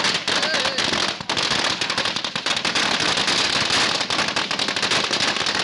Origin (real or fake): real